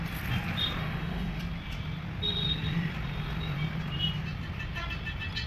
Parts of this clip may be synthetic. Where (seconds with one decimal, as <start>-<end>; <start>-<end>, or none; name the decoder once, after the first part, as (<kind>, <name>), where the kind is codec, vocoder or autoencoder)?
0.8-1.4 (autoencoder, DAC-VAE)